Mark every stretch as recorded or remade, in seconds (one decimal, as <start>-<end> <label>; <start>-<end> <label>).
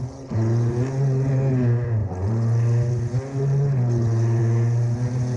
0.0-5.4 recorded